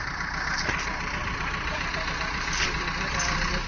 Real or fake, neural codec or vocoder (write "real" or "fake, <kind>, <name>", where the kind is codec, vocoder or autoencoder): fake, vocoder, BigVGAN v2